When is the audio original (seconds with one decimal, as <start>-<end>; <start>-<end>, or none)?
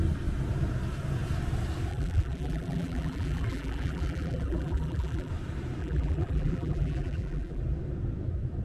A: 0.0-1.9; 5.3-5.8; 7.6-8.6